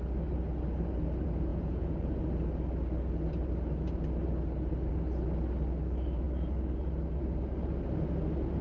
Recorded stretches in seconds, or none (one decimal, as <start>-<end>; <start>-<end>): 0.0-1.5; 2.1-8.6